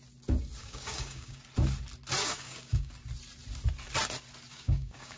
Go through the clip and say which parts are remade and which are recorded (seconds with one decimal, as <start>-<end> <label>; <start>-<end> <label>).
0.0-0.6 recorded; 0.6-1.4 remade; 1.4-2.2 recorded; 2.2-2.9 remade; 2.9-4.5 recorded; 4.5-5.2 remade